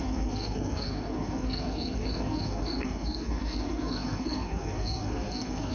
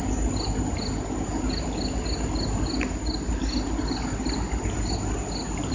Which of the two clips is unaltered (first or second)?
second